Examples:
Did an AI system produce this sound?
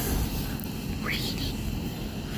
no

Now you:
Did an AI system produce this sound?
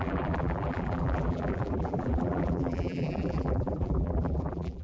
yes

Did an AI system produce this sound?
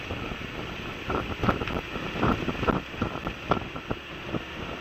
no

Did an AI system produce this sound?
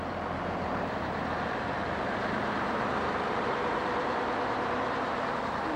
yes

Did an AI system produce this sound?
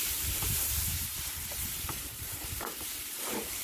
yes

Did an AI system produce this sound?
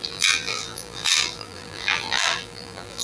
yes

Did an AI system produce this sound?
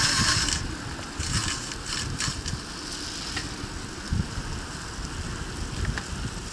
no